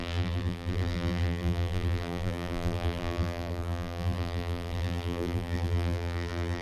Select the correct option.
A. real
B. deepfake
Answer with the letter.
B